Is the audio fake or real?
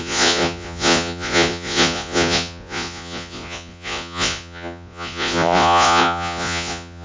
fake